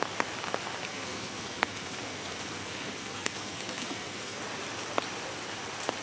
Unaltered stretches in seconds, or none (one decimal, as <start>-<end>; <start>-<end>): 0.0-0.8; 4.4-6.0